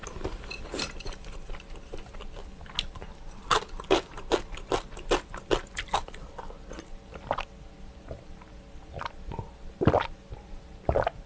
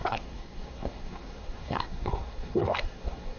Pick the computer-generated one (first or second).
second